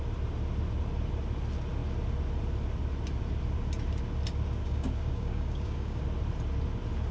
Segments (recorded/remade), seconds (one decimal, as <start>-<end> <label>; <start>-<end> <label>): 0.0-4.6 recorded; 4.6-6.0 remade; 6.0-7.1 recorded